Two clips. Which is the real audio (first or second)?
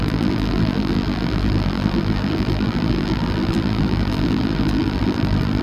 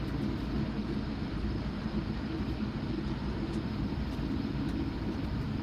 second